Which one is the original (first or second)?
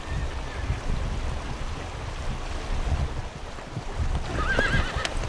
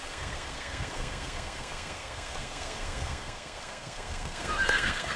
first